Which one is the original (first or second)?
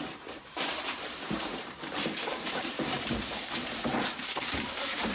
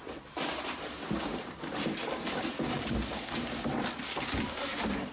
second